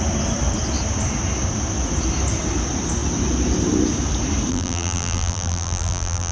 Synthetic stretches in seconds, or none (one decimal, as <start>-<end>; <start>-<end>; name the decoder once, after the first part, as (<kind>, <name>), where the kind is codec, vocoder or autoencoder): 4.5-6.3 (vocoder, BigVGAN v2)